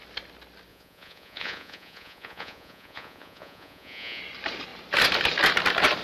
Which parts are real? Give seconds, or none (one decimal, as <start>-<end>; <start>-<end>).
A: 0.0-0.7; 4.2-6.0

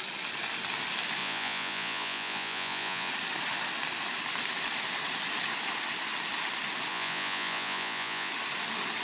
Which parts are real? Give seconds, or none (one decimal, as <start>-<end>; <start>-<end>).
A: 0.0-1.2; 3.1-6.9; 8.3-9.0

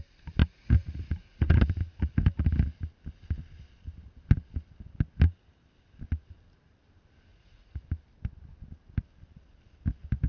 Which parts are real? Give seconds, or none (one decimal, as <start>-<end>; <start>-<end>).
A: 0.0-0.4; 1.6-7.3; 7.8-10.3

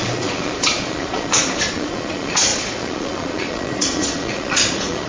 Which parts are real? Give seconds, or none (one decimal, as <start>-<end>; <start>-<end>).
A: none

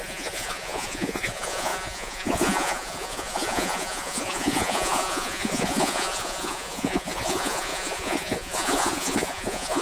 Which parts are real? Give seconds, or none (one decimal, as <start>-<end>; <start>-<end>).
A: none